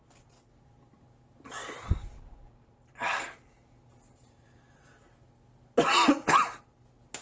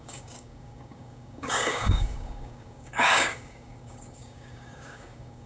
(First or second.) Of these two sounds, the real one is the first